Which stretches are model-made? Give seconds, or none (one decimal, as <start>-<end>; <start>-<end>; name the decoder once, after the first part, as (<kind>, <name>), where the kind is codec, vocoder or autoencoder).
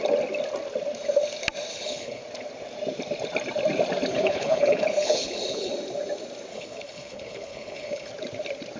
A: 1.7-2.2 (codec, HILCodec); 4.1-5.7; 6.5-8.1